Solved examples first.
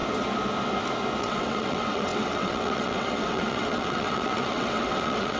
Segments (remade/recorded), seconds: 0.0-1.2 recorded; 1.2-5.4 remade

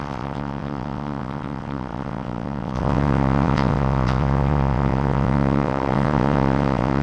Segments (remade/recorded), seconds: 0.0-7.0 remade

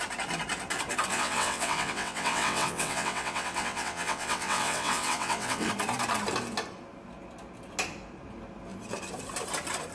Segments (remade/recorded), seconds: 0.0-1.1 recorded; 1.1-5.7 remade; 5.7-9.9 recorded